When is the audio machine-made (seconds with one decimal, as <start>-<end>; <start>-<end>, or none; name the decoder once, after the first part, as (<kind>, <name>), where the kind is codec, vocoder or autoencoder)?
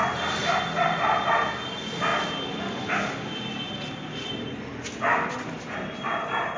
5.1-6.6 (vocoder, BigVGAN v2)